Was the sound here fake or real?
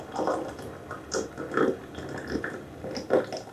real